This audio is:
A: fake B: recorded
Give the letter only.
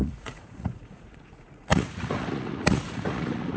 A